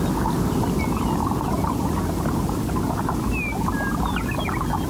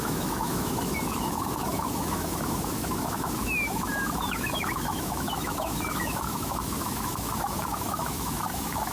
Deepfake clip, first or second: second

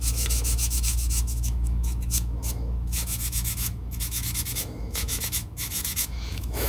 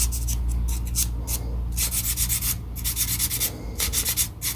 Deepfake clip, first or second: first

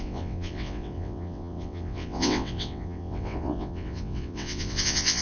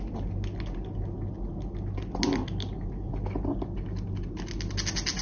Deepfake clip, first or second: first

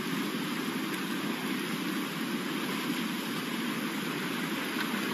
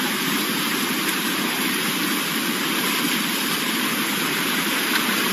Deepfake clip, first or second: second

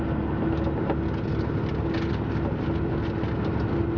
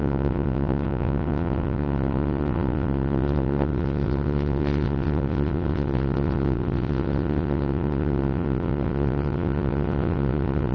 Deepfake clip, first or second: second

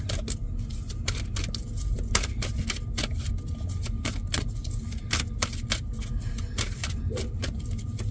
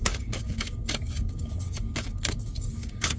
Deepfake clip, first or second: second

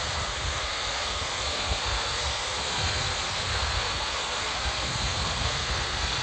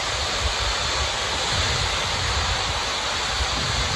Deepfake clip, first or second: first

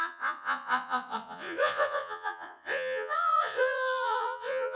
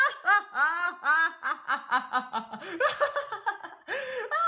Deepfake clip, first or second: first